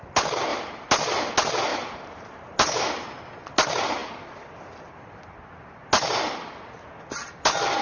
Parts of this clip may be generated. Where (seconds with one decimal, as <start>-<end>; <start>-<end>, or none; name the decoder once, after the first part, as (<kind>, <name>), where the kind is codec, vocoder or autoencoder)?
1.7-2.9 (vocoder, BigVGAN v2); 4.0-4.6